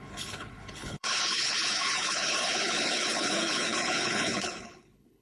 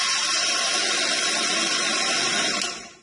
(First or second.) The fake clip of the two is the first